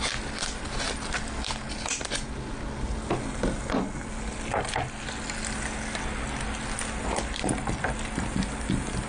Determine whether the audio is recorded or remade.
recorded